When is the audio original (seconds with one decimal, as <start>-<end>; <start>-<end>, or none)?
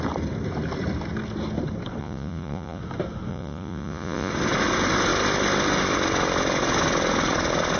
0.0-2.0; 2.8-3.3; 4.3-7.8